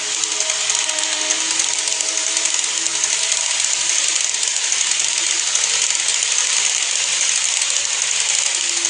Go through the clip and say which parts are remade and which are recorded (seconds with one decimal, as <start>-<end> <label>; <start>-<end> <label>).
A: 0.0-1.3 recorded; 1.3-2.0 remade; 2.0-6.1 recorded; 6.1-7.3 remade; 7.3-8.9 recorded